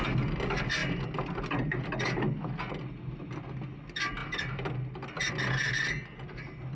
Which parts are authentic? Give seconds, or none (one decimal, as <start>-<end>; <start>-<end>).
0.0-6.8